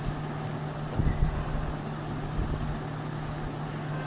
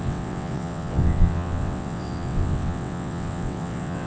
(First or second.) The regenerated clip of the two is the second